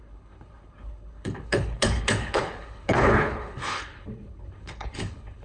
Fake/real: fake